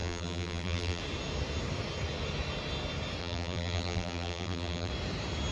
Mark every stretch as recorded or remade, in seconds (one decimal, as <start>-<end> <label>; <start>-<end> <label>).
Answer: 0.0-1.0 remade; 1.0-3.2 recorded; 3.2-4.9 remade; 4.9-5.5 recorded